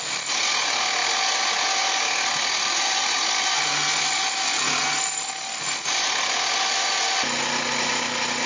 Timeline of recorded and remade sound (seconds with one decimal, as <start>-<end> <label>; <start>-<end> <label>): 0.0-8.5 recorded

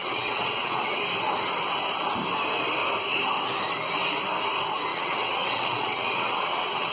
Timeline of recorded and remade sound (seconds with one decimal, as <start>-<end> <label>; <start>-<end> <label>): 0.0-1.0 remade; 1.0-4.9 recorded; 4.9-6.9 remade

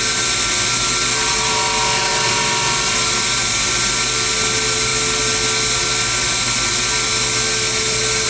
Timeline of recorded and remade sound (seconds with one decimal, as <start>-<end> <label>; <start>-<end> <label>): 0.0-8.3 recorded

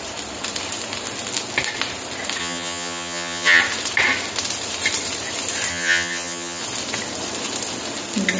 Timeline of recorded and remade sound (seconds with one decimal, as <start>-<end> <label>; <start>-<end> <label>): 0.0-2.4 recorded; 2.4-3.6 remade; 3.6-5.7 recorded; 5.7-6.6 remade; 6.6-8.4 recorded

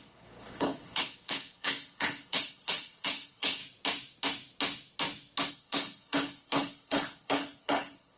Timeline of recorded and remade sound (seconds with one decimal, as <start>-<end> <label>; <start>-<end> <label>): 0.0-3.6 remade; 3.6-5.5 recorded; 5.5-8.2 remade

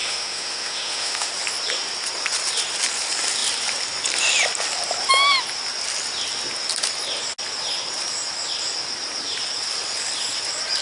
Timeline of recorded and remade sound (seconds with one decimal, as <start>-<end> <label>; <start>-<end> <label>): 0.0-1.3 remade; 1.3-10.8 recorded

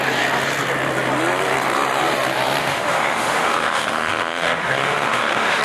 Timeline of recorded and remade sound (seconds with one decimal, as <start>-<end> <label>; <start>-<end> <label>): 0.0-2.6 recorded; 2.6-5.6 remade

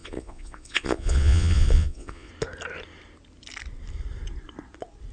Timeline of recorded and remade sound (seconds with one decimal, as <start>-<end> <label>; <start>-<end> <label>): 0.0-2.3 remade; 2.3-5.1 recorded